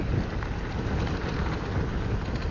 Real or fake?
real